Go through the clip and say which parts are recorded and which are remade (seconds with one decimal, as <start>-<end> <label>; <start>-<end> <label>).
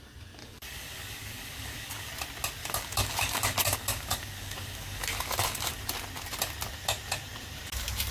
0.0-0.4 recorded; 0.4-2.1 remade; 2.1-2.6 recorded; 2.6-5.8 remade; 5.8-8.1 recorded